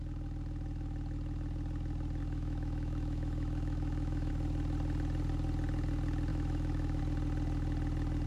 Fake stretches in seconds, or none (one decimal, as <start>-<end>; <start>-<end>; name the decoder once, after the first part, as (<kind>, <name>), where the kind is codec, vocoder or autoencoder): 2.2-4.3 (autoencoder, DAC-VAE); 6.3-7.0